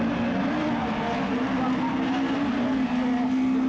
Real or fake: real